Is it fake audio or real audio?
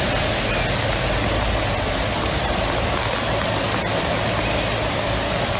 real